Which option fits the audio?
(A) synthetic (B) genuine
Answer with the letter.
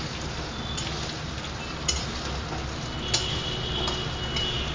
B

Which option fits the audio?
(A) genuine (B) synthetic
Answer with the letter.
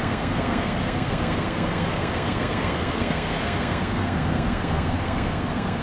B